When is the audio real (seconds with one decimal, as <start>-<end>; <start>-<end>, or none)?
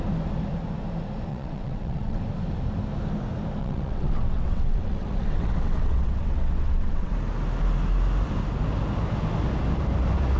0.0-1.3; 2.2-3.6; 7.1-10.4